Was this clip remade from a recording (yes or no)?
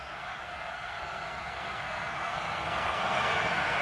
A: yes